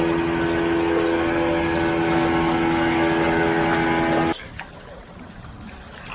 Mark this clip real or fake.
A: real